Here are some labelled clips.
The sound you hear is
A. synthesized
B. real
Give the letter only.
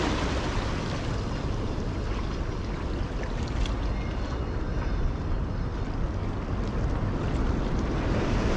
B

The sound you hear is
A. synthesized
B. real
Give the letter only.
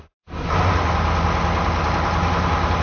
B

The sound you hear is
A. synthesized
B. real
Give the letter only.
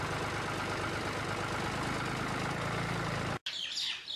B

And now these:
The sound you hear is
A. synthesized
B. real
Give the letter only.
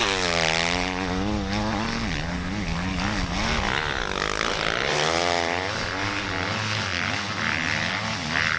B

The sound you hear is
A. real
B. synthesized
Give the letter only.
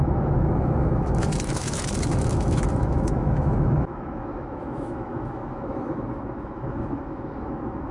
B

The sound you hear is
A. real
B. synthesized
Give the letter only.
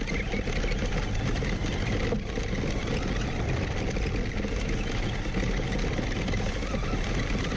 A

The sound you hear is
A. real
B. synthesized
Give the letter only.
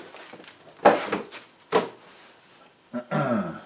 A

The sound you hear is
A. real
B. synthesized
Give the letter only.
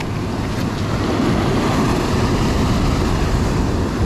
A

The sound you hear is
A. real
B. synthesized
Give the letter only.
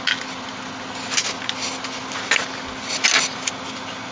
A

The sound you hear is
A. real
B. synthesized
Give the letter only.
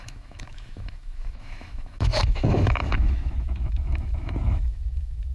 B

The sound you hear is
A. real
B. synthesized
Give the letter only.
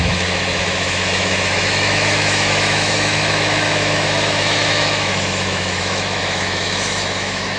B